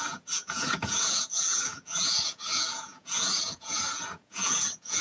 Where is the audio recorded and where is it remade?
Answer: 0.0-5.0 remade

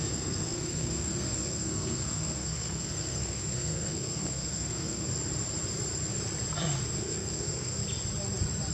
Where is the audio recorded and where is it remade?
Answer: 0.0-5.1 remade; 5.1-7.0 recorded; 7.0-7.8 remade; 7.8-8.7 recorded

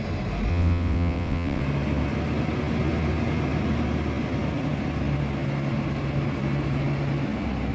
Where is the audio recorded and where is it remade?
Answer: 0.0-0.5 recorded; 0.5-1.6 remade; 1.6-7.7 recorded

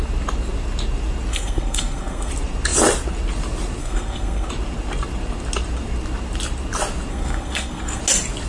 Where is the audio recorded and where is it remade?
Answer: 0.0-1.3 recorded; 1.3-2.3 remade; 2.3-3.8 recorded; 3.8-4.5 remade; 4.5-7.1 recorded; 7.1-8.0 remade; 8.0-8.5 recorded